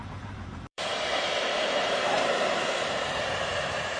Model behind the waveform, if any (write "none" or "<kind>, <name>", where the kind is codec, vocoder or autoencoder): vocoder, BigVGAN v2